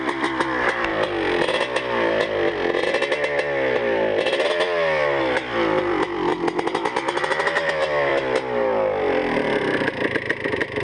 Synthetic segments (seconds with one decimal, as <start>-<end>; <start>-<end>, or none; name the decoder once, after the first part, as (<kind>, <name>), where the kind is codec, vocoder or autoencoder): 0.0-0.9 (vocoder, BigVGAN v2); 5.2-6.3; 7.7-8.1; 9.1-10.8